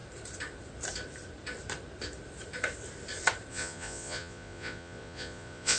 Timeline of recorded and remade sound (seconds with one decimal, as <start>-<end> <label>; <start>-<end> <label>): 0.0-3.5 recorded; 3.5-5.8 remade